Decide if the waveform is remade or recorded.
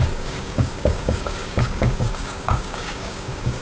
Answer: remade